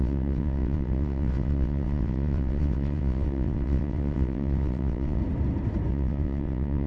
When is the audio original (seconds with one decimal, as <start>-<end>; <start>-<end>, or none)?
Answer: 5.2-5.9